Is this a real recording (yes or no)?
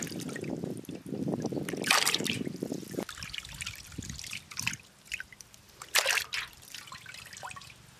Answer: yes